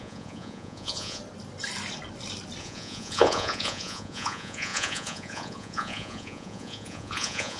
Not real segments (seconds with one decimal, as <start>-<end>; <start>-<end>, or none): 0.0-1.2; 2.6-7.6